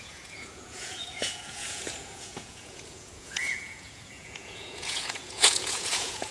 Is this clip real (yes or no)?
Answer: no